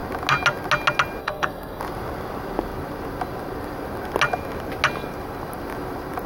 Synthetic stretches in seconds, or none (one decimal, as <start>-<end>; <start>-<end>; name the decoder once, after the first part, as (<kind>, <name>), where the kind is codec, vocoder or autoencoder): 1.2-1.8 (codec, SNAC)